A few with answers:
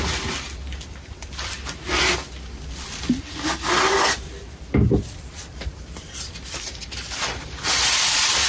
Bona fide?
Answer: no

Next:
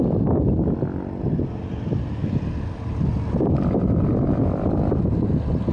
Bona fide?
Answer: yes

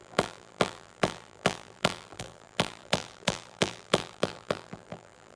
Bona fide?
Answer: no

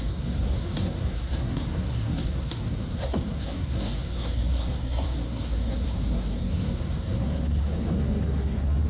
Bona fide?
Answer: no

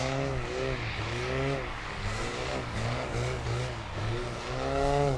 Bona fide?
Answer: no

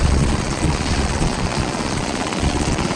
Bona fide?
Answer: no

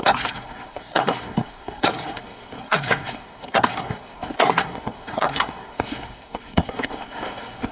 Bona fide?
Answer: no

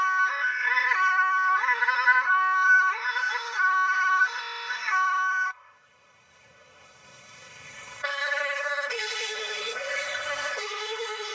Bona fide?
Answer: no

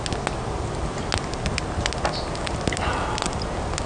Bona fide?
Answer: yes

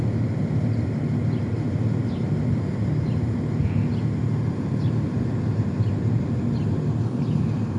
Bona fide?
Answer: yes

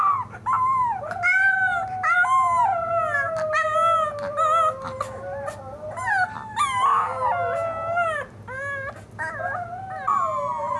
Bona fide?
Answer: yes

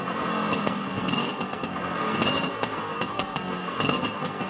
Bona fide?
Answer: no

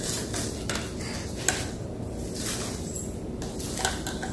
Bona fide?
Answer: yes